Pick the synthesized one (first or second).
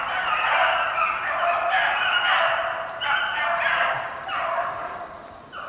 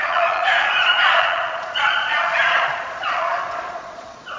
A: second